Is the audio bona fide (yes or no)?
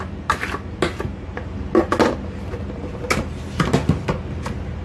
yes